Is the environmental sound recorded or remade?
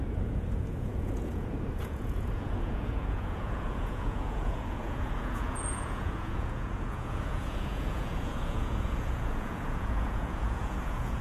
remade